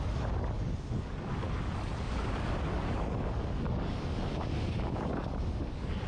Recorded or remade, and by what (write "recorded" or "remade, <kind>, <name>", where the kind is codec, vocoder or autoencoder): remade, codec, DAC